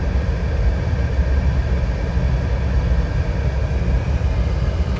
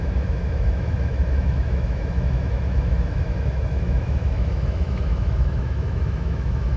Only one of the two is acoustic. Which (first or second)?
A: first